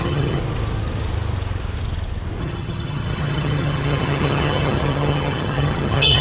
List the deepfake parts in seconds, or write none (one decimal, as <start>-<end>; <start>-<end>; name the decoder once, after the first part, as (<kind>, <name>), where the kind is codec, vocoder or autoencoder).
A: 0.0-0.4 (vocoder, HiFi-GAN); 2.4-6.2